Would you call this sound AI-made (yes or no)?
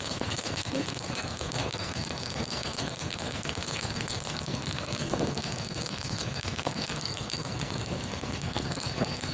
yes